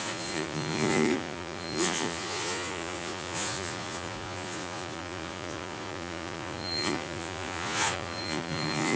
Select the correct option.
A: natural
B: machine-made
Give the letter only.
B